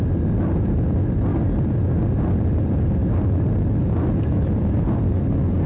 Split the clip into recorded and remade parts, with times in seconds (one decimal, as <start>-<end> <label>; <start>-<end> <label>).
0.0-5.7 recorded